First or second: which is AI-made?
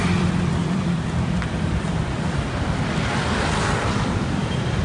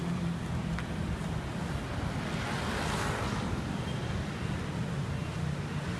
first